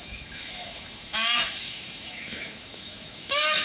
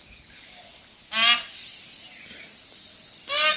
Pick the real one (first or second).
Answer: second